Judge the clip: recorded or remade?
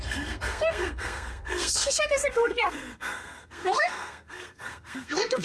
remade